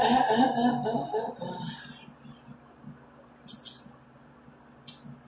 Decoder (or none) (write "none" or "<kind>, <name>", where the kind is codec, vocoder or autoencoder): none